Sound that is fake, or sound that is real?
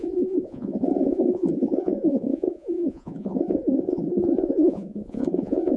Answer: fake